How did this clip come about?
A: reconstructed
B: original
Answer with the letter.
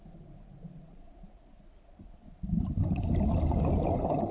B